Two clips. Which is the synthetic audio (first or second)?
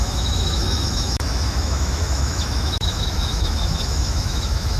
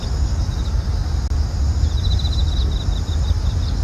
first